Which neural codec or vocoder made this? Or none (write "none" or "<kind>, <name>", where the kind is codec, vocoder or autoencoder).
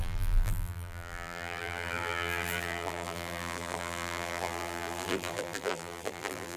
vocoder, BigVGAN v2